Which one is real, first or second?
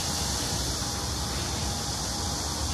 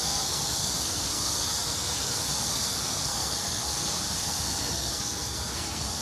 first